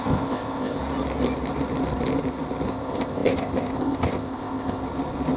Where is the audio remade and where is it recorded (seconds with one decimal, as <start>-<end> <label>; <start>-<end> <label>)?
0.0-0.8 remade; 0.8-2.7 recorded; 2.7-4.8 remade; 4.8-5.4 recorded